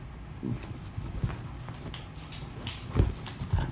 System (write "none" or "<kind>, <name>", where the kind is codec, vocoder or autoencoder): none